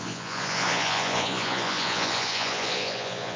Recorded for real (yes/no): no